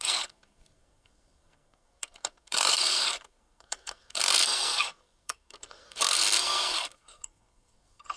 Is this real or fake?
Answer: fake